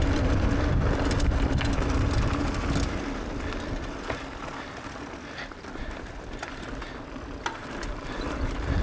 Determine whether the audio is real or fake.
real